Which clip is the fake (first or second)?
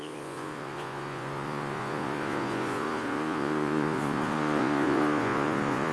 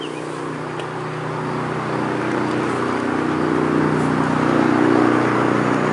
first